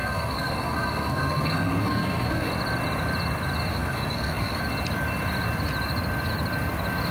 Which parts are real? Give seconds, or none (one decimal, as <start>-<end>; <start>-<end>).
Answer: 2.5-3.7; 4.6-7.1